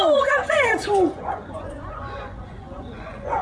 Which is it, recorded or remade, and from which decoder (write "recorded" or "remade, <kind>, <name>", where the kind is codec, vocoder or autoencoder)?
remade, vocoder, Vocos